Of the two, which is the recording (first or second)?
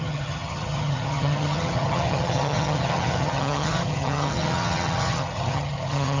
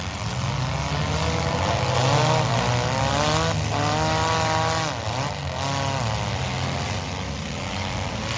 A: second